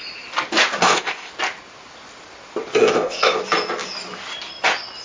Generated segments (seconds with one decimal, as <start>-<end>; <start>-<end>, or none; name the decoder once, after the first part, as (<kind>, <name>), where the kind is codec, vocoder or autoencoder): 0.8-1.3 (codec, ZipCodec); 2.8-3.4